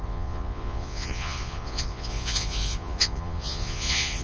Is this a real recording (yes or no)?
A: no